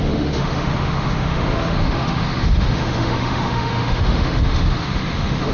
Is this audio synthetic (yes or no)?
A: yes